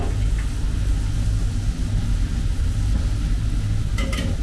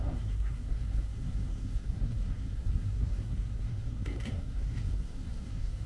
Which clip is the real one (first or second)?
first